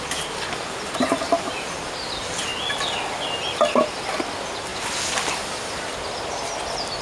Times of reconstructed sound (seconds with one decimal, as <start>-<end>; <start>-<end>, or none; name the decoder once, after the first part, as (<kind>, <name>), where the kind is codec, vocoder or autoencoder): none